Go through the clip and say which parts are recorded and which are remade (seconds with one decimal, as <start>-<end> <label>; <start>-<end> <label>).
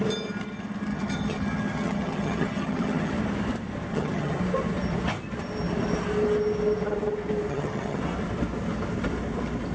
0.0-0.9 recorded; 0.9-3.1 remade; 3.1-3.9 recorded; 3.9-4.4 remade; 4.4-7.5 recorded; 7.5-8.0 remade; 8.0-9.7 recorded